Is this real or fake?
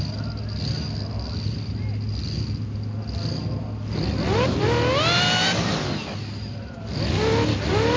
real